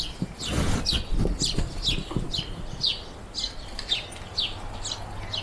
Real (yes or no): yes